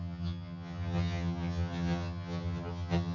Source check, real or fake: fake